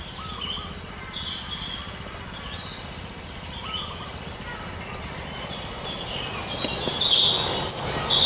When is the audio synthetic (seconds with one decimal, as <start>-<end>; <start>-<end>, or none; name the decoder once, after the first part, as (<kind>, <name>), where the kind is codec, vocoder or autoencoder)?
none